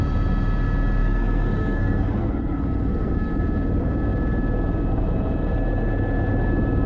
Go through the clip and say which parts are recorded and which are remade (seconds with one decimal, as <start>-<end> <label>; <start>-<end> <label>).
0.0-1.0 recorded; 1.0-3.4 remade; 3.4-6.9 recorded